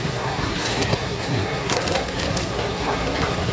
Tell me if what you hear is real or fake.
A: fake